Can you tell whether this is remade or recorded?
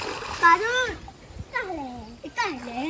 recorded